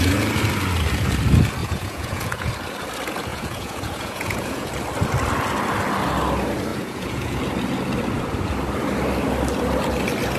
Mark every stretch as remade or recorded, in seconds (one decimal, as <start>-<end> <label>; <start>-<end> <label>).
0.0-1.6 recorded; 1.6-2.5 remade; 2.5-3.3 recorded; 3.3-4.7 remade; 4.7-6.7 recorded; 6.7-7.4 remade; 7.4-10.4 recorded